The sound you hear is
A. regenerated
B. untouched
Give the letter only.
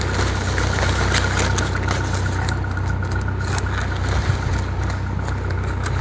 B